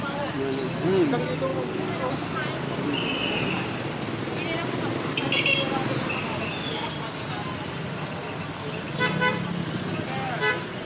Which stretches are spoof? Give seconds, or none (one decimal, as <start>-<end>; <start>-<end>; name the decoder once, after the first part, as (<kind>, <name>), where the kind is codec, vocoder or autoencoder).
none